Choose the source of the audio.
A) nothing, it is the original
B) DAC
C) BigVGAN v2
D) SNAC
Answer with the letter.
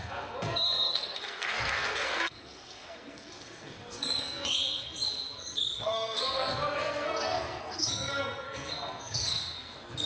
D